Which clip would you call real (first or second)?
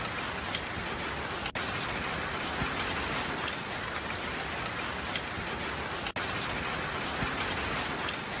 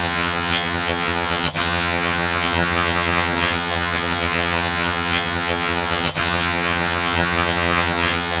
first